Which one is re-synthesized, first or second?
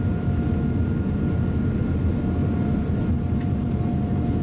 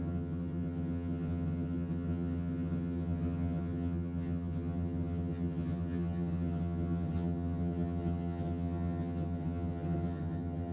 second